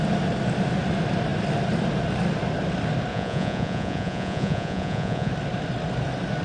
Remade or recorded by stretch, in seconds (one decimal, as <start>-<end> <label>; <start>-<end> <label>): 0.0-3.1 recorded; 3.1-5.3 remade; 5.3-6.4 recorded